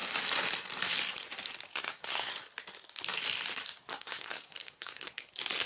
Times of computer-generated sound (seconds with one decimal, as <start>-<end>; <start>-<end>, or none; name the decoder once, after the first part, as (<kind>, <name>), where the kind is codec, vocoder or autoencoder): 1.7-2.3 (codec, SNAC); 3.9-5.3